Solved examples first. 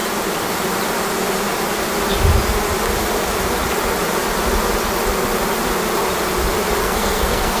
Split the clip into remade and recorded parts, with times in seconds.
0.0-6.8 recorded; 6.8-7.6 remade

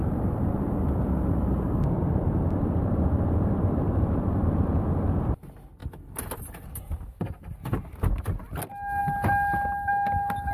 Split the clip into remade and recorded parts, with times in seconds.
0.0-10.5 recorded

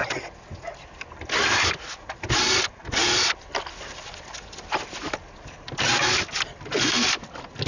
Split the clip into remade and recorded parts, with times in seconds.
0.0-7.7 recorded

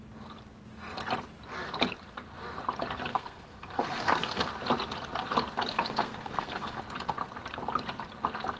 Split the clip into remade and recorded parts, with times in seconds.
0.0-3.1 recorded; 3.1-4.5 remade; 4.5-5.7 recorded; 5.7-6.8 remade; 6.8-8.6 recorded